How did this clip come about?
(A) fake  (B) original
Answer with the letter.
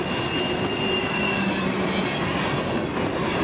B